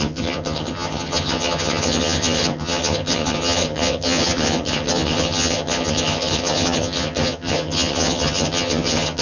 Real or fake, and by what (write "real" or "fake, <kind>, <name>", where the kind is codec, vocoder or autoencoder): fake, vocoder, HiFi-GAN